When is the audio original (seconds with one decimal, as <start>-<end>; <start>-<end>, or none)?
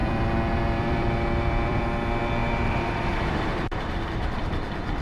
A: 1.8-2.4